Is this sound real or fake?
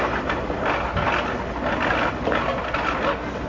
real